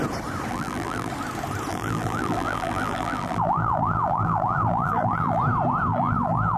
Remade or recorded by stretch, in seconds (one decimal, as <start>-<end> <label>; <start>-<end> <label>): 0.0-0.5 recorded; 0.5-1.1 remade; 1.1-1.7 recorded; 1.7-5.4 remade; 5.4-5.9 recorded; 5.9-6.6 remade

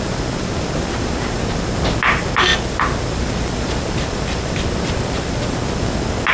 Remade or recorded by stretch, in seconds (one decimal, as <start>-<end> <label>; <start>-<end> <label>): 0.0-6.3 recorded

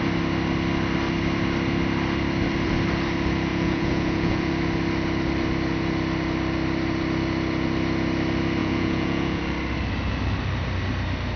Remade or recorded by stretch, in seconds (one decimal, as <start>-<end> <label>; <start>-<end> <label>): 0.0-3.5 recorded; 3.5-4.5 remade; 4.5-8.6 recorded; 8.6-9.4 remade; 9.4-11.4 recorded

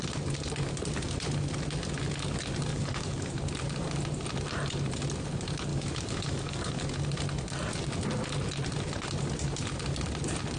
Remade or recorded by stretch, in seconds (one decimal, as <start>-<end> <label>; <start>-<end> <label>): 0.0-2.7 recorded; 2.7-3.3 remade; 3.3-5.7 recorded; 5.7-6.8 remade; 6.8-10.6 recorded

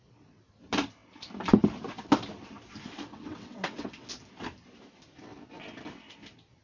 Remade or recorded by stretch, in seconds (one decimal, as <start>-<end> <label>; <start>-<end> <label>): 0.0-3.1 recorded; 3.1-4.1 remade; 4.1-6.6 recorded

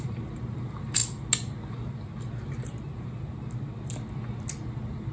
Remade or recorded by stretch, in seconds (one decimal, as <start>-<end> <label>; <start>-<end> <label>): 0.0-5.1 recorded

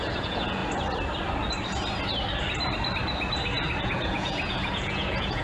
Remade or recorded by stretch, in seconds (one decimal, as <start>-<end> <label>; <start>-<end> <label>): 0.0-0.6 remade; 0.6-3.8 recorded; 3.8-5.4 remade